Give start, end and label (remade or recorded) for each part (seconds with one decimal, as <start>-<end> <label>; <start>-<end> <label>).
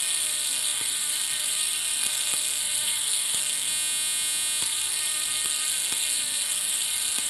0.0-3.7 remade; 3.7-4.6 recorded; 4.6-7.3 remade